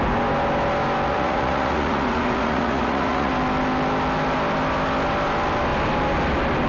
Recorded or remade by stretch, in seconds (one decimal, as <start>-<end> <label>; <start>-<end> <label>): 0.0-1.1 recorded; 1.1-3.3 remade; 3.3-6.7 recorded